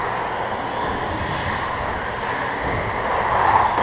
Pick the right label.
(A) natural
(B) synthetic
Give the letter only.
A